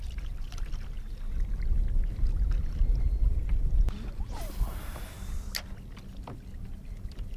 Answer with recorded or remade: recorded